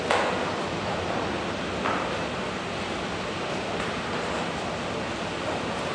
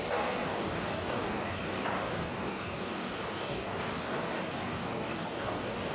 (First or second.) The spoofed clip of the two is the second